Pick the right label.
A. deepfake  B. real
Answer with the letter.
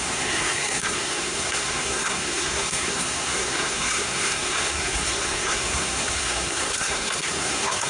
A